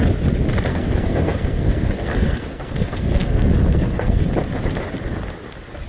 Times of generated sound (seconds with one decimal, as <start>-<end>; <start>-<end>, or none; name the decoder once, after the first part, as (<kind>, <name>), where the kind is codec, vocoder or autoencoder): 0.7-4.2 (codec, SNAC)